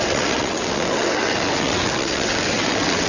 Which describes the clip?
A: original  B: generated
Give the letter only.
B